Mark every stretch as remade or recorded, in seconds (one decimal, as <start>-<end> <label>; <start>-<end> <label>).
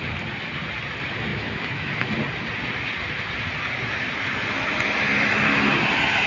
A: 0.0-1.3 recorded; 1.3-2.1 remade; 2.1-6.3 recorded